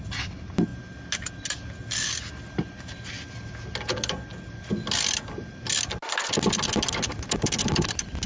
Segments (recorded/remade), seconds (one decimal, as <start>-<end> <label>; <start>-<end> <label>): 0.0-8.3 recorded